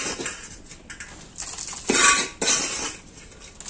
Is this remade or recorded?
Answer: recorded